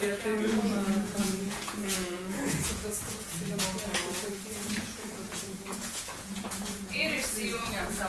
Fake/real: fake